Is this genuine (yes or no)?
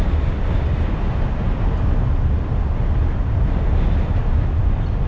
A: yes